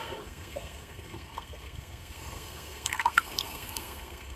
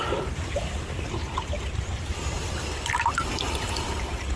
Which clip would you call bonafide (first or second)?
second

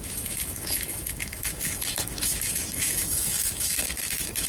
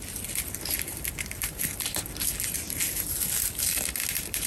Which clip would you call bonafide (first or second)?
second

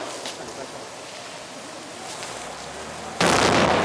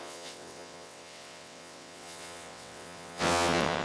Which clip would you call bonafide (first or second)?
first